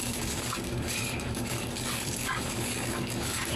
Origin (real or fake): fake